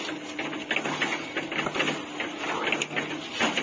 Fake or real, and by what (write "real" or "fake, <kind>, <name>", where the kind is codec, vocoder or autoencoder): real